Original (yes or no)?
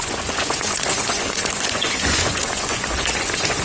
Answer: no